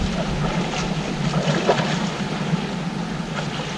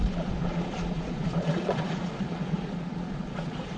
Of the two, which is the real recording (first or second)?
first